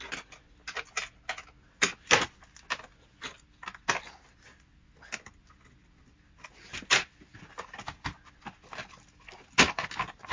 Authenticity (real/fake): real